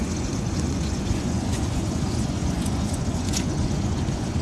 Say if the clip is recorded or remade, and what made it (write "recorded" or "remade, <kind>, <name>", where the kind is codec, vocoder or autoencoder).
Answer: remade, vocoder, Vocos